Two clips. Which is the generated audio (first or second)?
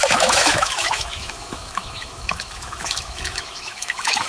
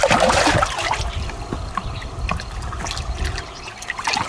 first